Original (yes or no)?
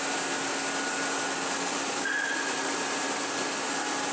yes